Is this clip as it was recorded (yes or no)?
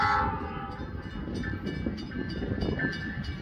yes